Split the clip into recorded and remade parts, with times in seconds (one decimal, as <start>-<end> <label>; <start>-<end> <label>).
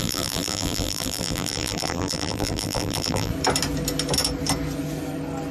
0.0-3.3 remade; 3.3-5.5 recorded